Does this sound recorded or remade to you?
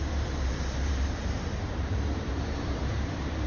remade